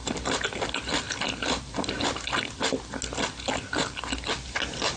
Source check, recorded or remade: recorded